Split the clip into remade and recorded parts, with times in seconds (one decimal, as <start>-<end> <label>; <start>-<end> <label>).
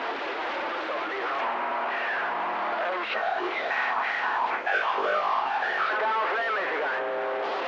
0.0-3.1 recorded; 3.1-5.9 remade; 5.9-7.7 recorded